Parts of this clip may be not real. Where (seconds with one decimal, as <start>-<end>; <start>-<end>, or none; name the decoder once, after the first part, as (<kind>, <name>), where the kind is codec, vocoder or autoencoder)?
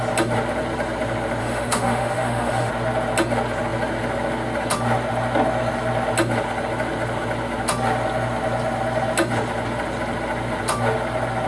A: 1.4-2.7 (autoencoder, DAC-VAE)